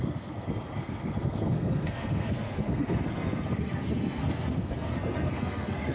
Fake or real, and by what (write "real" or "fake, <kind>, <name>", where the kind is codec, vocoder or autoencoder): fake, codec, SNAC